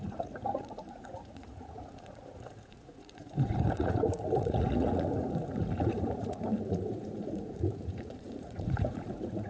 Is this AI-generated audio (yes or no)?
yes